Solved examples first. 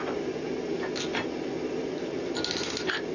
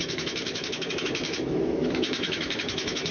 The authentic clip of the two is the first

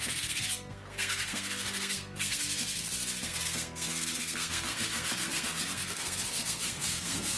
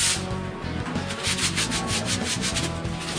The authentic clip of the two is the second